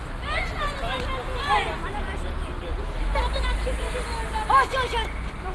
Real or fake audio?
real